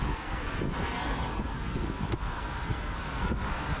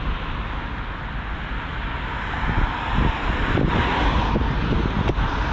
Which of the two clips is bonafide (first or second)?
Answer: second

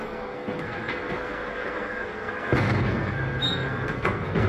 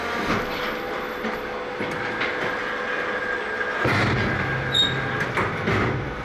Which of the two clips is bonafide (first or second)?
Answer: second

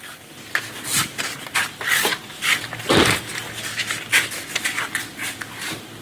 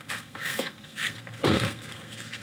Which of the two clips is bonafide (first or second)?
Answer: first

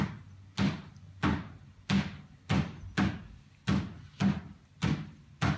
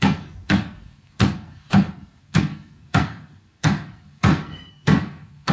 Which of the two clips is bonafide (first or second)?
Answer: first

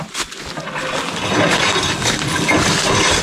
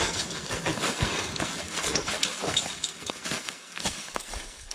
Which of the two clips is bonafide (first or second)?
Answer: first